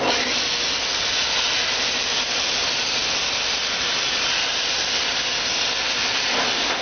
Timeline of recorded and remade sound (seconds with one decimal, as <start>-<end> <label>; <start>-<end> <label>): 0.0-6.8 recorded